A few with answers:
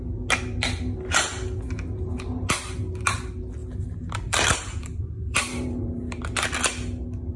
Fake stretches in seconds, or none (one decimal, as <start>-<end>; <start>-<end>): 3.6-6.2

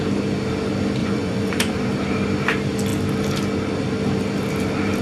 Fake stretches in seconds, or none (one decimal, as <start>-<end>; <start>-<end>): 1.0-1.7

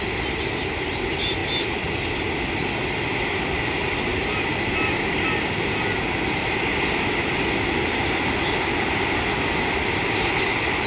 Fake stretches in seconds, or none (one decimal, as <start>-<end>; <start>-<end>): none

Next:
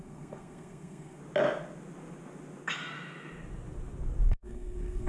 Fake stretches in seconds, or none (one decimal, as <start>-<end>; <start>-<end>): 0.0-1.2; 4.3-5.1